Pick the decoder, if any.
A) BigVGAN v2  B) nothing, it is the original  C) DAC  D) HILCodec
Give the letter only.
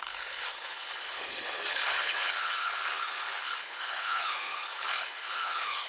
D